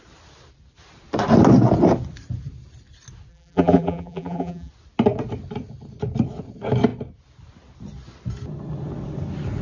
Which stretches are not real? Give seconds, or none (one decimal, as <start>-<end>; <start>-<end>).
3.3-4.7